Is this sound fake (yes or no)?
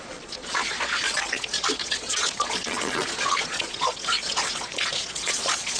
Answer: yes